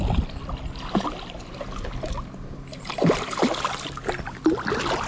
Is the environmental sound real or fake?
real